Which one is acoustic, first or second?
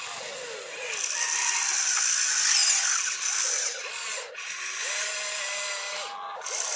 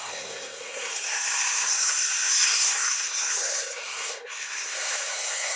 first